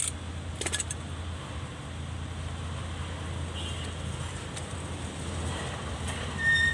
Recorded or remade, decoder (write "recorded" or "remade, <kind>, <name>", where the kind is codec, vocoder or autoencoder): recorded